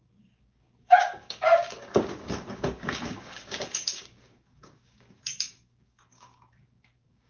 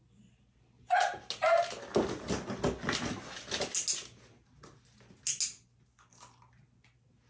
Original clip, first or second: second